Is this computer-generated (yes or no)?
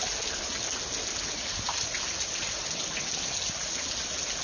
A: no